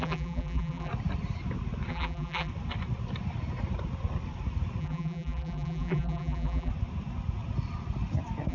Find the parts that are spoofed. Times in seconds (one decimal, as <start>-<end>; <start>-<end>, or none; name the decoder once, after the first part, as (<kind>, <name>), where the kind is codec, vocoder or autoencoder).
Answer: 0.0-0.9 (vocoder, BigVGAN v2); 1.9-2.5; 4.8-6.7